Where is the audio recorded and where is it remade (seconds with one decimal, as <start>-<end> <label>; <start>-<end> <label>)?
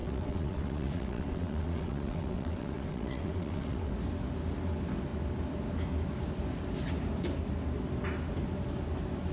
0.0-3.9 remade; 3.9-9.3 recorded